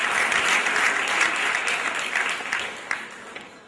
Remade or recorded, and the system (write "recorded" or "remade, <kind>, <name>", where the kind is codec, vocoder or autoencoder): recorded